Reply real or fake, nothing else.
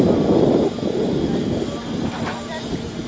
real